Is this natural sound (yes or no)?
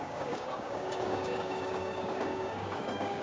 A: no